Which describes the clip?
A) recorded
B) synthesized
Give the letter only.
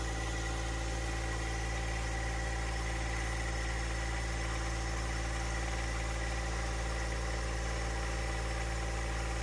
A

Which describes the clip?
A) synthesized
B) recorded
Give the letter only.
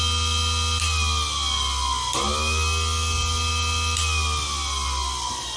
B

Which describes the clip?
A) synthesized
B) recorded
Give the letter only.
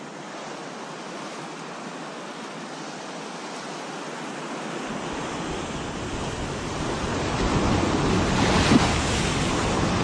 B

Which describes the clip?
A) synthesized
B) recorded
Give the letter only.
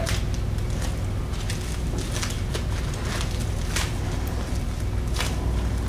B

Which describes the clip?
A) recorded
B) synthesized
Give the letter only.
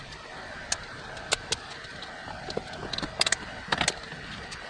A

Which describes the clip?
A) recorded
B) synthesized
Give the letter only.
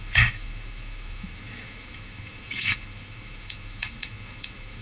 B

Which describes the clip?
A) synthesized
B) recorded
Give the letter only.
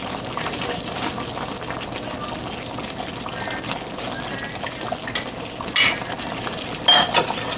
B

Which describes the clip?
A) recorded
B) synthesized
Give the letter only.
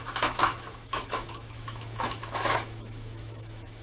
B